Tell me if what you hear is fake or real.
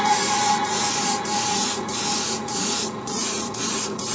fake